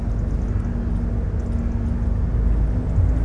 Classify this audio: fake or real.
real